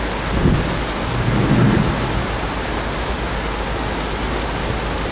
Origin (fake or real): real